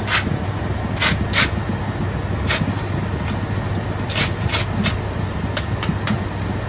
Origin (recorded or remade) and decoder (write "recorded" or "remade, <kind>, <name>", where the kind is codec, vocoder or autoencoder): recorded